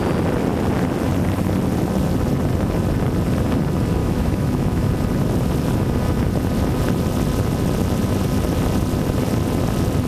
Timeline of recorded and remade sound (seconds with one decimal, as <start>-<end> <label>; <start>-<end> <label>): 0.0-4.0 recorded; 4.0-4.9 remade; 4.9-10.1 recorded